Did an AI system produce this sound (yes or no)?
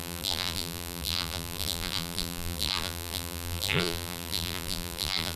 yes